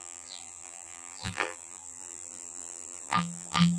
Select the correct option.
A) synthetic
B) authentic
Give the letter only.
A